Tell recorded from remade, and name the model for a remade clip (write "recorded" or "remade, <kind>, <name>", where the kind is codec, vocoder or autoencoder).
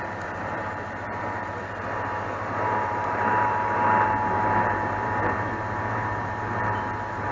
remade, vocoder, BigVGAN v2